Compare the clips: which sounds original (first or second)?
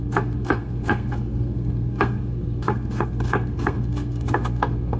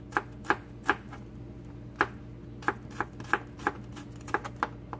second